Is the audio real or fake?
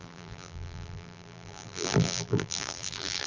fake